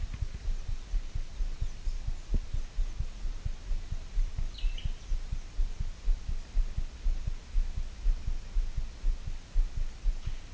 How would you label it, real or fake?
real